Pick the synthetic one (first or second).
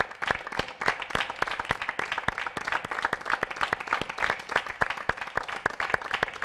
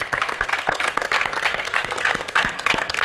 second